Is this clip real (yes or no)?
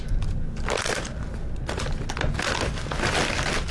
yes